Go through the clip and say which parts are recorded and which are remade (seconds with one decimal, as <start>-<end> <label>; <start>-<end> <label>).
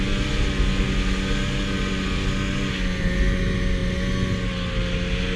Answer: 0.0-5.4 recorded